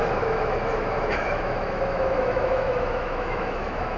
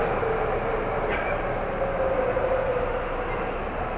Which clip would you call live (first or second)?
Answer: second